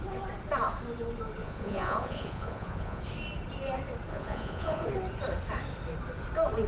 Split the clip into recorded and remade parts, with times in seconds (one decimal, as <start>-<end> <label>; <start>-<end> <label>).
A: 0.0-1.4 recorded; 1.4-3.0 remade; 3.0-4.1 recorded; 4.1-4.9 remade; 4.9-6.7 recorded